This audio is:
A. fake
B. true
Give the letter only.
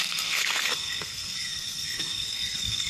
A